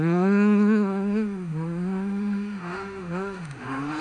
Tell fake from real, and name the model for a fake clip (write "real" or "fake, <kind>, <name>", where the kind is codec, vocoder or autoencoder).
fake, autoencoder, DAC-VAE